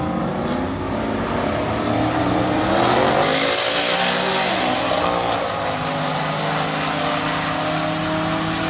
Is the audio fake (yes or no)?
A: no